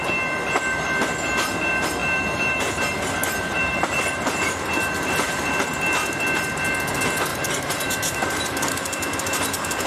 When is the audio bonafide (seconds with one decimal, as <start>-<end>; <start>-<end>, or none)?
0.0-2.0; 2.8-3.2; 5.5-7.3; 8.7-9.9